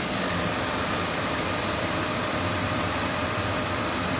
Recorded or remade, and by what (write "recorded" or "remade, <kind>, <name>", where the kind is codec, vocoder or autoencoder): remade, vocoder, BigVGAN v2